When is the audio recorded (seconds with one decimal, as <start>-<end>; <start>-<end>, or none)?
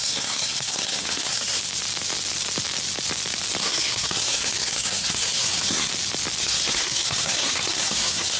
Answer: 1.6-3.6; 5.9-6.4